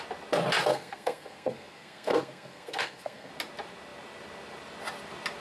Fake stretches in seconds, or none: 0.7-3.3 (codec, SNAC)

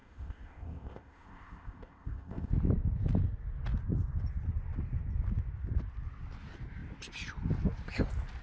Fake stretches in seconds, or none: 0.0-2.5 (codec, ZipCodec)

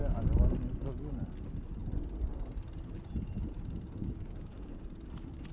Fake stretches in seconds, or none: 4.0-4.8 (codec, DAC)

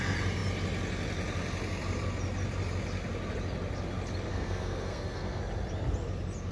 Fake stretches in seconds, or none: 4.3-5.4 (codec, SNAC)

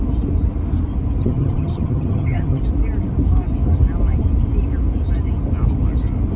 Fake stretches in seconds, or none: 1.2-2.6 (vocoder, HiFi-GAN)

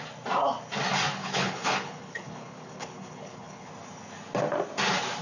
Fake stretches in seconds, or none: 1.2-3.7 (codec, HILCodec)

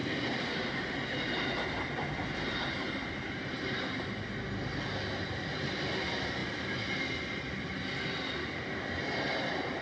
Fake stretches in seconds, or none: none

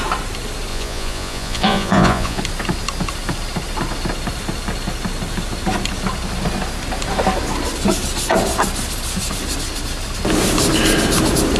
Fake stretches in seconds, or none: 0.7-2.4 (vocoder, Vocos)